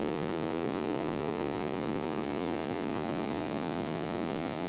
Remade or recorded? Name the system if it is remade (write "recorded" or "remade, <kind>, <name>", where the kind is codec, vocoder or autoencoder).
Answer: remade, vocoder, Vocos